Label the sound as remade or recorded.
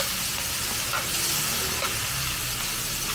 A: recorded